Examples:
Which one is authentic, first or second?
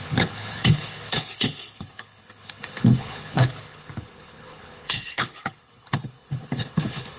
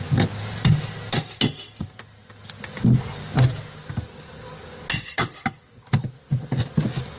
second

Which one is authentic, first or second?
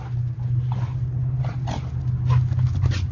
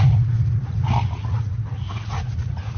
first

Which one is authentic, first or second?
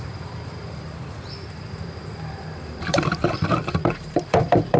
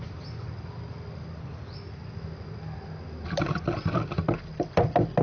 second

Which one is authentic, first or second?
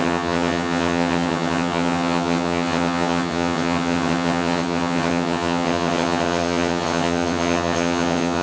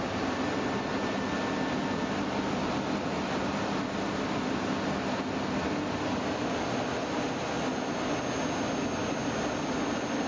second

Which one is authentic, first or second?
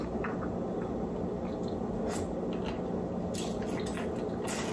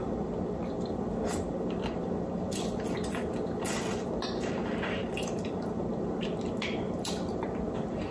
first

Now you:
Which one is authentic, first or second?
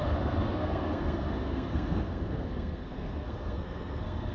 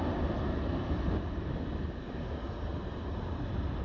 second